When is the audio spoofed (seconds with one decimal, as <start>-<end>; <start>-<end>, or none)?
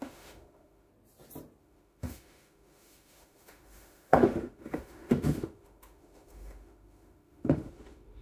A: 0.0-0.9; 1.6-8.2